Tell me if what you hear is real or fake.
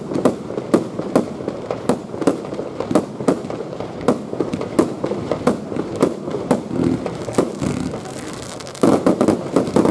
real